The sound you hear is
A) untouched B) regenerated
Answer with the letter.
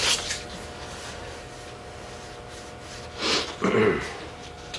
A